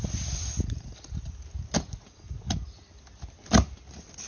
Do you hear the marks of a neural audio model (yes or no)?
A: no